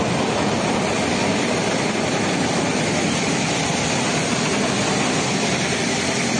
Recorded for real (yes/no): yes